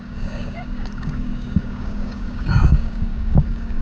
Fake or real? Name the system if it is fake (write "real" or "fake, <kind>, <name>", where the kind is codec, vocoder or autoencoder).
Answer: fake, codec, DAC